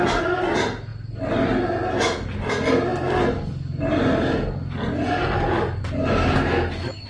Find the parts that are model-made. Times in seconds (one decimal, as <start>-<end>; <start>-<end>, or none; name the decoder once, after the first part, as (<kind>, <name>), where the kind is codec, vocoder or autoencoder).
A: none